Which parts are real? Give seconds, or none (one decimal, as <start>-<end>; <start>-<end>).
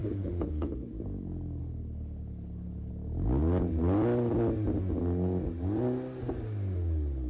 0.9-1.6; 2.9-7.3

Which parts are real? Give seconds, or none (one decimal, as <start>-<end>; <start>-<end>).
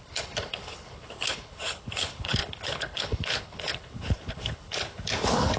none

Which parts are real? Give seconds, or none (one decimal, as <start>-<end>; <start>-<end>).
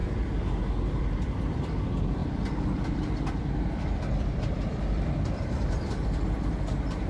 0.0-1.0